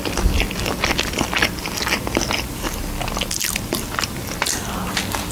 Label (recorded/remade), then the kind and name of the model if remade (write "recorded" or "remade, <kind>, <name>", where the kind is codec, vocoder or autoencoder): recorded